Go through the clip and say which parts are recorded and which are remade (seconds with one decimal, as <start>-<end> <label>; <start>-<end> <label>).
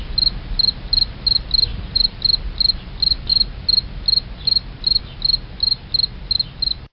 0.0-1.7 recorded; 1.7-2.2 remade; 2.2-6.9 recorded